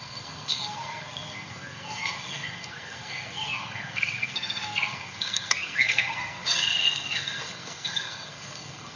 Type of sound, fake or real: fake